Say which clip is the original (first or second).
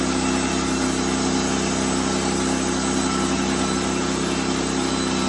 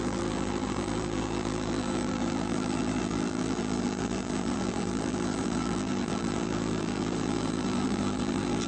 first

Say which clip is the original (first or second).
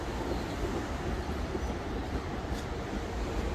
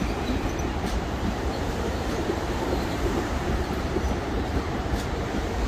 first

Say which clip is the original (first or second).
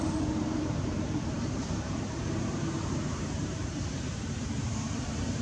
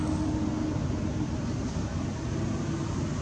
second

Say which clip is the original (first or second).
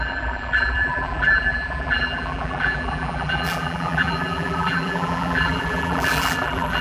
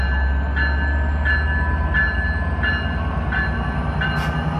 second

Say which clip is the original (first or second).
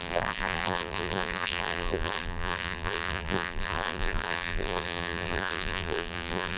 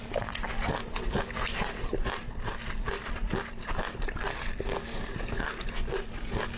second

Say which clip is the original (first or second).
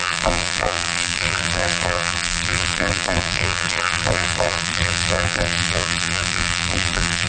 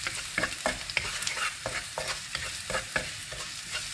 second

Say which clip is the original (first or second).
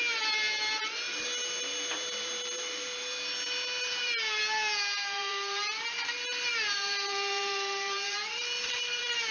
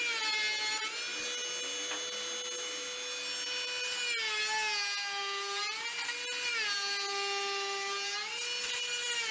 second